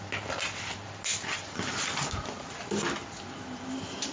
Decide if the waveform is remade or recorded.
recorded